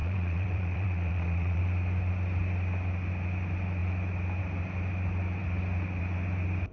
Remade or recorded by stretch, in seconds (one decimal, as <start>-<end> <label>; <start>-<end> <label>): 0.0-1.6 remade; 1.6-6.7 recorded